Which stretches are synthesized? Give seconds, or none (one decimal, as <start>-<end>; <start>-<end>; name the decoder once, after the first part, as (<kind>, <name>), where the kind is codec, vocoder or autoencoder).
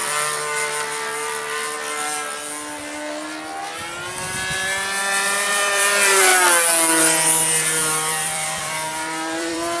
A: 5.0-6.3 (vocoder, BigVGAN v2); 7.0-9.8